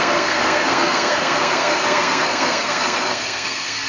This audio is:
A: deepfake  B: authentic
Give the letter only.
A